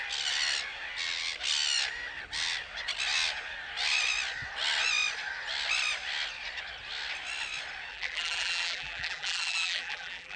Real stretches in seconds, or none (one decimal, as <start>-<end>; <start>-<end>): 0.0-7.9

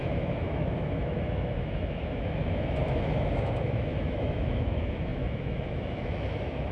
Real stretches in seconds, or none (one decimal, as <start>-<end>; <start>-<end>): none

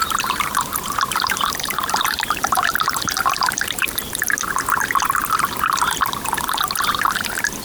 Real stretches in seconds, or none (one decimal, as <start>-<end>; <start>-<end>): 4.1-7.6